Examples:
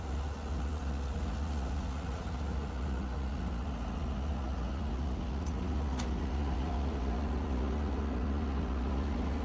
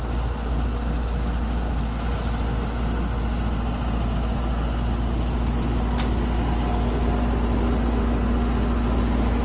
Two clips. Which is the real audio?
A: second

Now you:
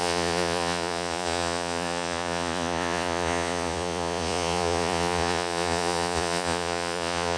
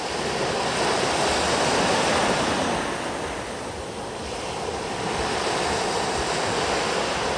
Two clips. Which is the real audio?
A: second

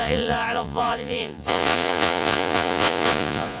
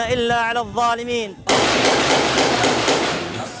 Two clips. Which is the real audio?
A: second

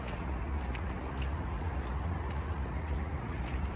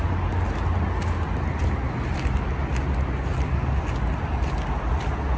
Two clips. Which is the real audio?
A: second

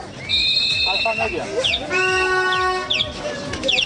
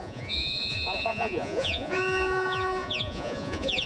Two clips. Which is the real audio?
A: first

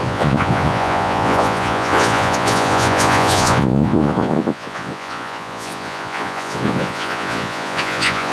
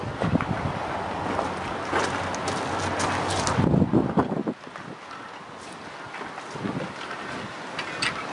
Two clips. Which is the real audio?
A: second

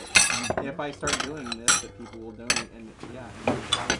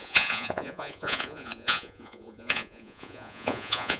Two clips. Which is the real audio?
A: first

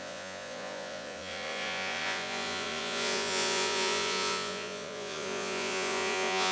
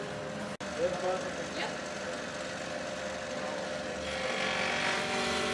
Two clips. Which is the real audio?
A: second